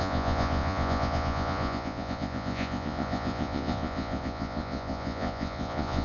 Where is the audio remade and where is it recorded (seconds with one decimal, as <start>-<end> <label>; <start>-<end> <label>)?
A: 0.0-6.0 remade